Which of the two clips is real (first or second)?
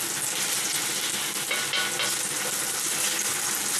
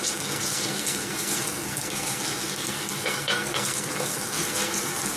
first